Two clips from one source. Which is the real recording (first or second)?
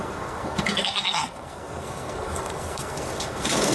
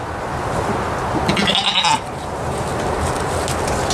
second